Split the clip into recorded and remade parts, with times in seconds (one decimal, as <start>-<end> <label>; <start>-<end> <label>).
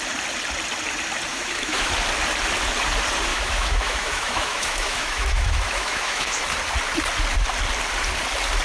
0.0-1.3 recorded; 1.3-1.9 remade; 1.9-3.3 recorded; 3.3-6.4 remade; 6.4-8.6 recorded